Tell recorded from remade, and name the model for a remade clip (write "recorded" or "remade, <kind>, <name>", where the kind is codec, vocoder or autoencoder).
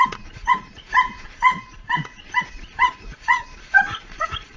remade, vocoder, Vocos